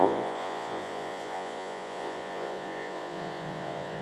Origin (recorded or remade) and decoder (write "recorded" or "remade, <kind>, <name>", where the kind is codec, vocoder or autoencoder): remade, vocoder, Vocos